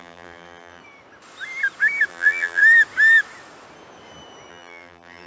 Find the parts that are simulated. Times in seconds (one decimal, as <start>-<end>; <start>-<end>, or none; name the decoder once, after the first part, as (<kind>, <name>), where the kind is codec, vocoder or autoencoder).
0.0-0.8 (vocoder, BigVGAN v2); 2.1-2.6; 4.5-5.3